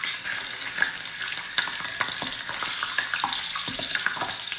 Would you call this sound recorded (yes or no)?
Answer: yes